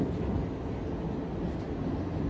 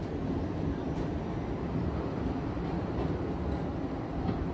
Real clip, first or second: first